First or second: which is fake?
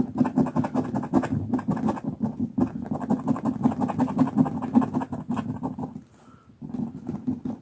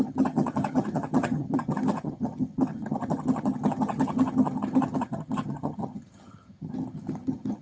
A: second